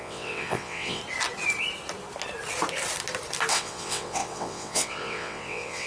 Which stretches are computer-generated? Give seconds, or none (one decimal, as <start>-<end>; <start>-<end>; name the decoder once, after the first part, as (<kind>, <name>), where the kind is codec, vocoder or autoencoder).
0.0-1.0 (vocoder, WaveNeXt); 3.5-5.9